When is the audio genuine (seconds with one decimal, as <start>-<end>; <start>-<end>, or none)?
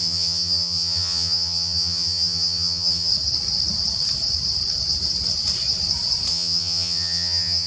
3.1-6.3